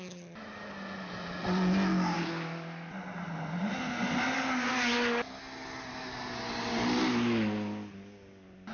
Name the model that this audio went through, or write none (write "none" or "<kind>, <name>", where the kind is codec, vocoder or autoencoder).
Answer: none